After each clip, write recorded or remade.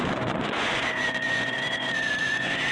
remade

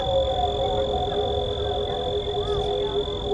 recorded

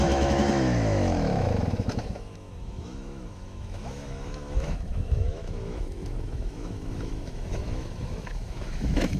remade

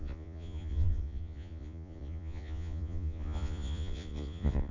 remade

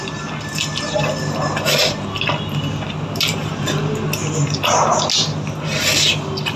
recorded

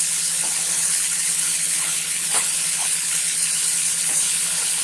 remade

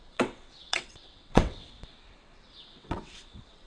remade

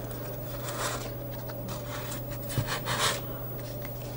recorded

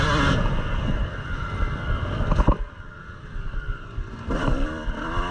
recorded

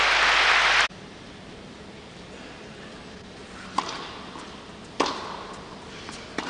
recorded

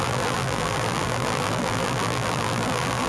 remade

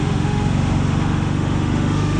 remade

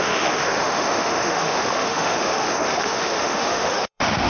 remade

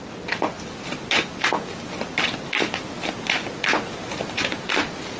recorded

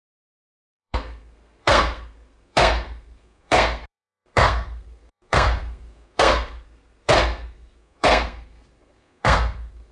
remade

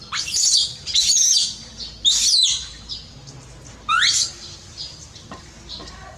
recorded